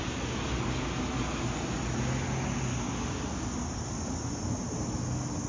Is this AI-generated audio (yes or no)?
no